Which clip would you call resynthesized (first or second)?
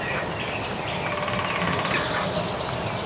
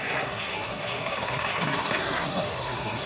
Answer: second